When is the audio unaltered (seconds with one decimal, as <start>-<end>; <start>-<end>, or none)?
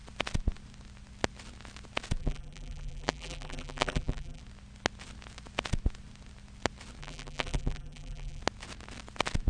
0.0-2.2; 4.4-7.0; 8.4-9.5